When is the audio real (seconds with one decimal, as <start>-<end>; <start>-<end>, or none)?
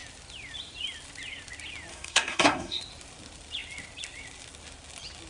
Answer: 0.0-1.9; 2.8-5.3